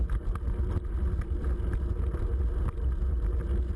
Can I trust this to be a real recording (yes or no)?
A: yes